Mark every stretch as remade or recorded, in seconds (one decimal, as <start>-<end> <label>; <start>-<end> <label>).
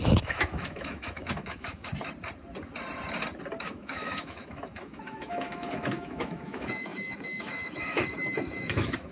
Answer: 0.0-1.9 remade; 1.9-3.6 recorded; 3.6-9.1 remade